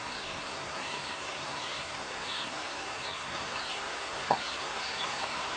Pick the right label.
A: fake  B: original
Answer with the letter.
A